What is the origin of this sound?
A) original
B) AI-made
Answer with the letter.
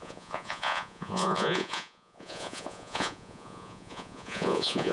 B